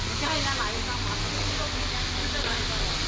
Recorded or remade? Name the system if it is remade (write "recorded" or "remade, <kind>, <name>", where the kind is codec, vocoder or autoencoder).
recorded